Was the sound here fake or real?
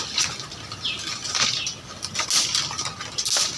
real